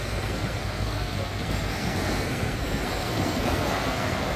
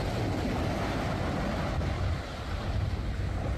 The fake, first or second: first